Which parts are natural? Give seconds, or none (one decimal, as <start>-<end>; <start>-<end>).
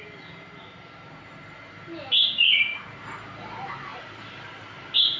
0.0-3.9; 4.5-5.2